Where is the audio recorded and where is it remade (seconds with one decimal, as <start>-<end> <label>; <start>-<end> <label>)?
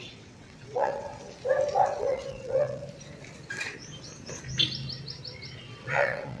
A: 0.0-1.1 remade; 1.1-2.0 recorded; 2.0-2.8 remade; 2.8-5.6 recorded; 5.6-6.4 remade